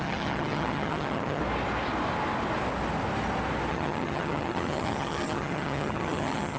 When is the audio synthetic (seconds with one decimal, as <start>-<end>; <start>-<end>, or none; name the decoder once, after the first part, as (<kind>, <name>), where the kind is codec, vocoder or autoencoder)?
0.0-1.4 (vocoder, HiFi-GAN); 3.7-6.6